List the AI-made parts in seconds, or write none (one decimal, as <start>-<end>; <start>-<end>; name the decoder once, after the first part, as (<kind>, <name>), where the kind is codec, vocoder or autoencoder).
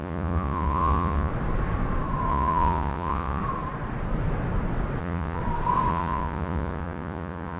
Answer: 0.0-1.3 (vocoder, Vocos); 2.3-3.4; 5.0-5.4; 5.9-7.6